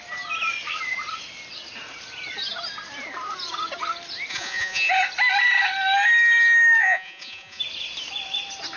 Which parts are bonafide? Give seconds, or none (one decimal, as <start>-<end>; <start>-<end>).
0.0-4.3; 4.9-6.8; 7.6-8.8